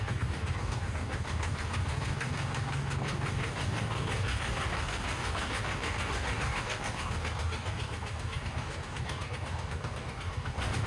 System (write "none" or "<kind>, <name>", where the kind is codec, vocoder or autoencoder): codec, DAC